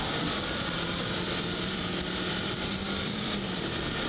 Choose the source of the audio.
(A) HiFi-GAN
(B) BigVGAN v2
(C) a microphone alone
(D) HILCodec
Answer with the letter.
B